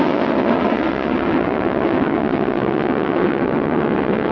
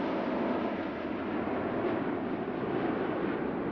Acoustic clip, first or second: second